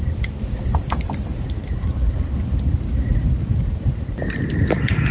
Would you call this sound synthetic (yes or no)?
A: no